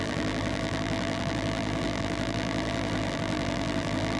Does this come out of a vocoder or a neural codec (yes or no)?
yes